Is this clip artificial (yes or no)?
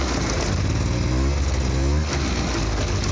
no